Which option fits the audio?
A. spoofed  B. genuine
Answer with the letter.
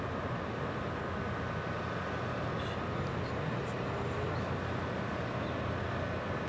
B